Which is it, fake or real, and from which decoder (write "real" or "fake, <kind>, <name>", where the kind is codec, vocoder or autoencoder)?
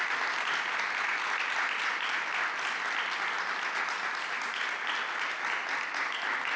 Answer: real